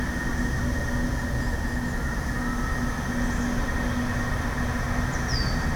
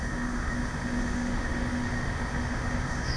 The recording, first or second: first